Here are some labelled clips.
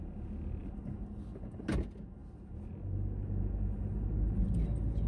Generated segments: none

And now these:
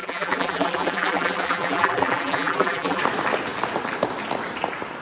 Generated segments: 0.0-3.0 (vocoder, BigVGAN v2)

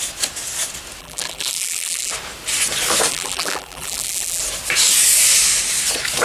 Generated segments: 1.0-2.1 (vocoder, BigVGAN v2); 3.1-4.4